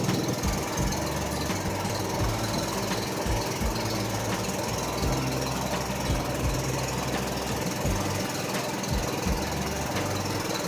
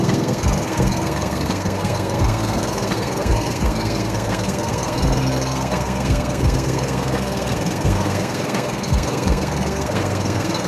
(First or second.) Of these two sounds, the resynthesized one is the second